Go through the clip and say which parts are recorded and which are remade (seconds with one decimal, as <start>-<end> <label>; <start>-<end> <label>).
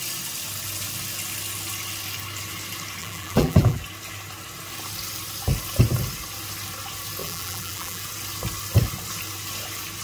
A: 0.0-3.0 recorded; 3.0-3.8 remade; 3.8-7.2 recorded; 7.2-8.0 remade; 8.0-10.0 recorded